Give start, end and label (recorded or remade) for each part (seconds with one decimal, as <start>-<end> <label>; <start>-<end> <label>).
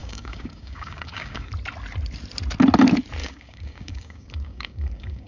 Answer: 0.0-1.5 remade; 1.5-3.2 recorded; 3.2-5.3 remade